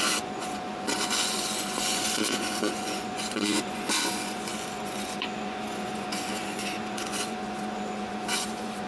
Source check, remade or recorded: remade